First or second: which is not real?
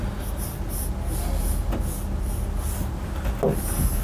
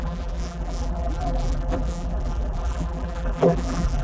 second